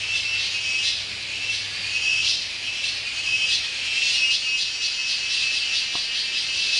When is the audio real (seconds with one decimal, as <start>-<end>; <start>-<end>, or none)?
0.0-2.1; 3.6-6.8